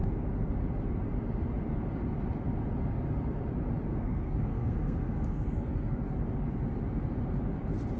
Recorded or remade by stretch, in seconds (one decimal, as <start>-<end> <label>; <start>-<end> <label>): 0.0-3.9 recorded; 3.9-6.0 remade; 6.0-8.0 recorded